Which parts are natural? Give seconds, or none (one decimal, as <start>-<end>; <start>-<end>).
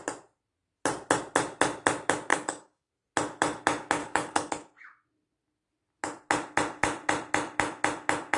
0.0-2.3; 2.9-4.0; 4.5-8.4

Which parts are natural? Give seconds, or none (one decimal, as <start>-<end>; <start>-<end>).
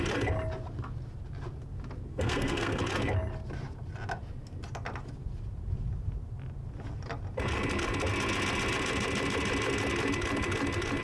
0.0-2.1; 2.8-11.0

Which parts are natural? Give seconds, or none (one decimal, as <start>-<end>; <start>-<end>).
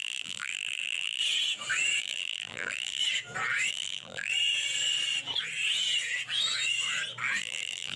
1.2-2.0; 3.0-3.7; 4.3-7.4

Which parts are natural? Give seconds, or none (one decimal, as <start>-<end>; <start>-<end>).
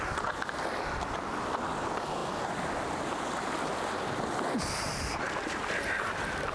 0.0-6.5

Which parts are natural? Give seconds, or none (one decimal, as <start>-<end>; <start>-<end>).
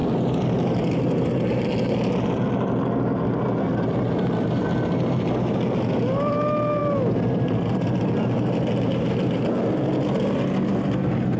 0.0-11.4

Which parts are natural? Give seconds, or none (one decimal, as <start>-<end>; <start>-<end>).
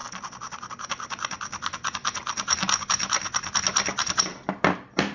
0.0-5.1